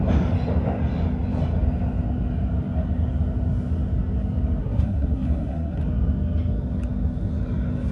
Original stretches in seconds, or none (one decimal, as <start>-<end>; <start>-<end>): 0.0-4.6; 5.8-7.9